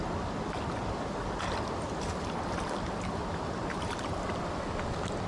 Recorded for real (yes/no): yes